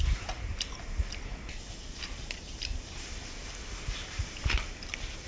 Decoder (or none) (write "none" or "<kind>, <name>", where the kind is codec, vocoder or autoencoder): none